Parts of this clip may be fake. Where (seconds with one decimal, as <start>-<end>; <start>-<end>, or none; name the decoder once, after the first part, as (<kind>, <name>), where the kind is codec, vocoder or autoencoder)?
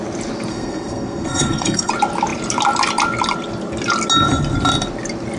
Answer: 0.5-1.9 (codec, SNAC)